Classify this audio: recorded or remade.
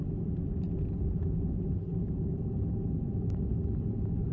remade